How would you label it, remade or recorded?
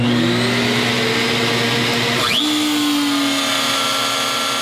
recorded